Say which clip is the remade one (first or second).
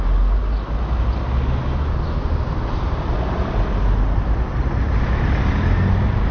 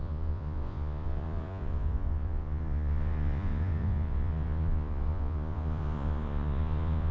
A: second